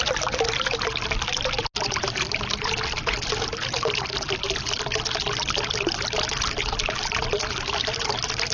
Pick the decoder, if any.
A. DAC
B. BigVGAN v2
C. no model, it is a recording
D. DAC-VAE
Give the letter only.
C